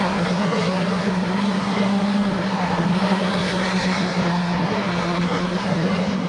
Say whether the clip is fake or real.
fake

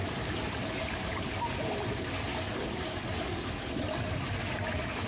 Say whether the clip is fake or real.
real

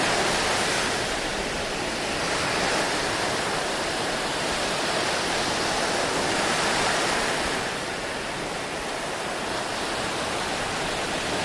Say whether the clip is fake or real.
real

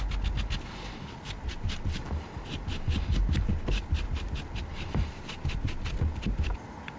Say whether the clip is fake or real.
real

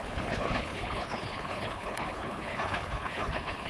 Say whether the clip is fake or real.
fake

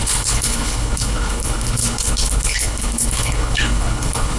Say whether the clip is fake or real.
fake